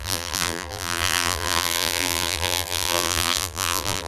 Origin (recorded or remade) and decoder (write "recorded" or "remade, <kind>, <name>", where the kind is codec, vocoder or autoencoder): remade, vocoder, BigVGAN v2